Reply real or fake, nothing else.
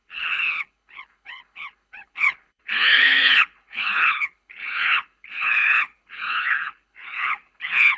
fake